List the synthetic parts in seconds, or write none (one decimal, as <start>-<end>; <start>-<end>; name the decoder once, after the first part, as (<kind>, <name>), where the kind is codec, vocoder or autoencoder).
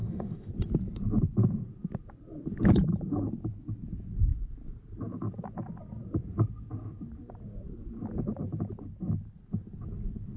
0.0-0.5 (autoencoder, DAC-VAE)